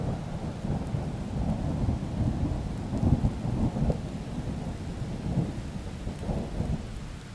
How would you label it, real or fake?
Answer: real